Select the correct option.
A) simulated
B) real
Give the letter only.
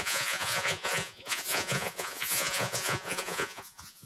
A